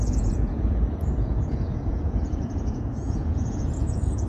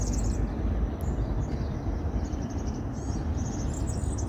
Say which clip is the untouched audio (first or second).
second